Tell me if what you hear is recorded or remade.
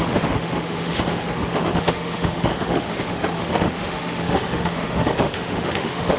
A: remade